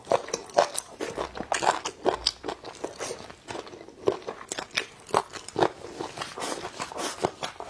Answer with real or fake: real